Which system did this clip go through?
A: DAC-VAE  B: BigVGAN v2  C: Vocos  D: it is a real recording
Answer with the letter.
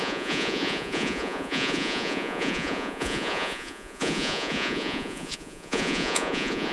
C